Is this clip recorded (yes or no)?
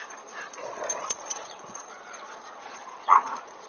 no